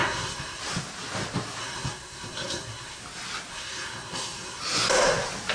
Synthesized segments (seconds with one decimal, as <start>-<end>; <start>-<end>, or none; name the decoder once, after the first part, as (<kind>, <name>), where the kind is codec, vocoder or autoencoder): 0.0-0.6 (codec, SNAC); 1.6-3.0; 3.5-4.6